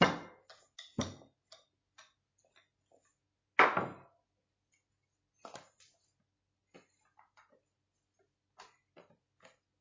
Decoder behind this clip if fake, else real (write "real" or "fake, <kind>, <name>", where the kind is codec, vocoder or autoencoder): real